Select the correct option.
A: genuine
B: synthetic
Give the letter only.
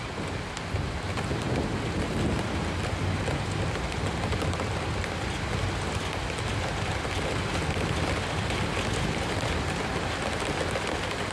A